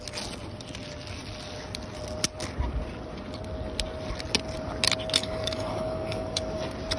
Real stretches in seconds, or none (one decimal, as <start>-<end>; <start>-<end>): 0.0-5.2; 6.6-7.0